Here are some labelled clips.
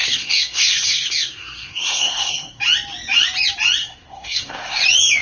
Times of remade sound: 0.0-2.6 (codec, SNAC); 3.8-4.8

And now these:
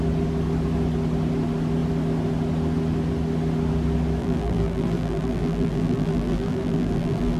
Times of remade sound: 4.2-7.4 (vocoder, BigVGAN v2)

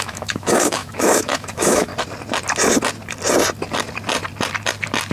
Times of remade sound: 0.0-1.9 (autoencoder, DAC-VAE)